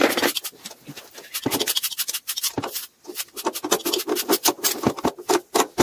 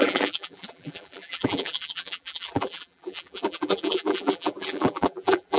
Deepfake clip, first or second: second